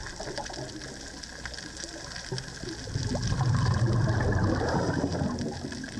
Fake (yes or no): no